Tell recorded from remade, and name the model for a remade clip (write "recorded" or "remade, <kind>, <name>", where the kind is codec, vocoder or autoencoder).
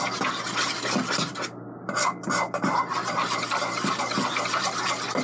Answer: recorded